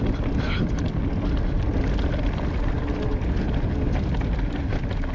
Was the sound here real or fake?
real